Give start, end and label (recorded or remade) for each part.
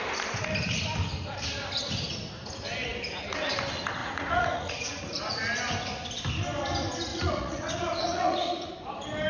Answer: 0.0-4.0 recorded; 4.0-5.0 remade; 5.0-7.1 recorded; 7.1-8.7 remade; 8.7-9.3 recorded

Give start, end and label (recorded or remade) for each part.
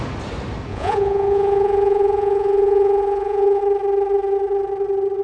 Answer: 0.0-0.7 recorded; 0.7-3.6 remade; 3.6-5.2 recorded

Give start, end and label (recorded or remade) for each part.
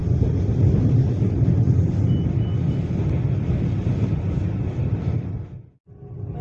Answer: 0.0-6.4 recorded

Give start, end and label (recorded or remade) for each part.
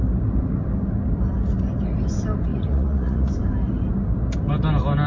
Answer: 0.0-2.5 recorded; 2.5-3.3 remade; 3.3-5.1 recorded